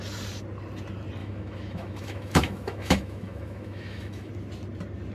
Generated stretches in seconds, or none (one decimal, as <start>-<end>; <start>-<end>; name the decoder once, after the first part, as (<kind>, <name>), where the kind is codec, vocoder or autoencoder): 1.2-4.3 (autoencoder, DAC-VAE)